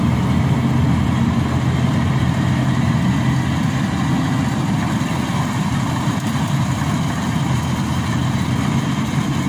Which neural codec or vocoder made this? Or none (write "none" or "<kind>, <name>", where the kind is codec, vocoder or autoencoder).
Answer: none